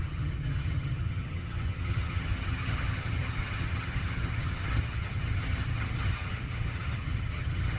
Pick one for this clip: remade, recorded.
remade